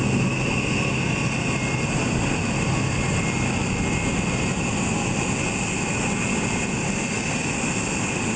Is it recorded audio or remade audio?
recorded